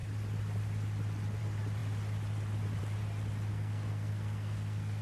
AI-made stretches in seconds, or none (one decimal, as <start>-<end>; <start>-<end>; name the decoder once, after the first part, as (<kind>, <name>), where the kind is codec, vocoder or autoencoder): 3.5-5.0 (codec, SNAC)